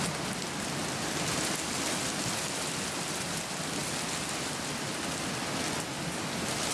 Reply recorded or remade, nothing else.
recorded